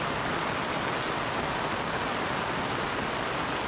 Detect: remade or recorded recorded